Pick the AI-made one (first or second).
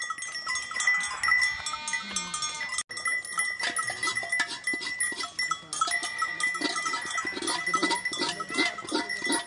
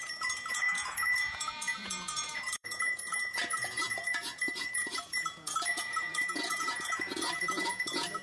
second